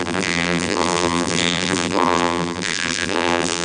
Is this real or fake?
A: fake